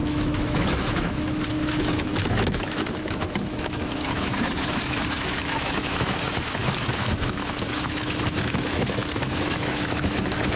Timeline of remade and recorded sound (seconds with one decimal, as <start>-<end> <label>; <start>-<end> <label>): 0.0-10.6 remade